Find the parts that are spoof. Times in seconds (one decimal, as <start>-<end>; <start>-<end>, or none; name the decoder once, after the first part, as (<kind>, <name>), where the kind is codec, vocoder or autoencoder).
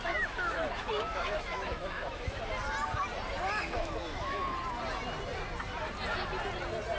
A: 0.0-2.4 (autoencoder, DAC-VAE); 3.6-4.4